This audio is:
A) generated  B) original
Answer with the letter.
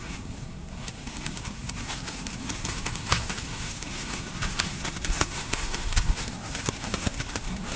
A